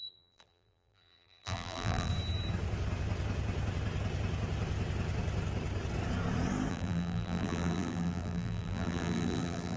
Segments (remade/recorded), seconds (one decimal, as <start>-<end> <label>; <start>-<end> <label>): 0.0-2.1 remade; 2.1-6.7 recorded; 6.7-9.8 remade